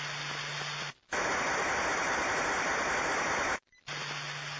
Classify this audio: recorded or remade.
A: recorded